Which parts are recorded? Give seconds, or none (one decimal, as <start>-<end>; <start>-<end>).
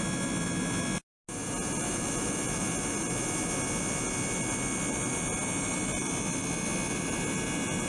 0.0-7.9